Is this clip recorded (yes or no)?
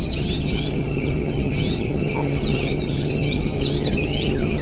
no